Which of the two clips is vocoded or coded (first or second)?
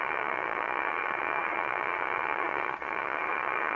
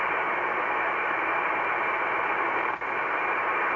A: first